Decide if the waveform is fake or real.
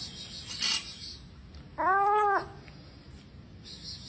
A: real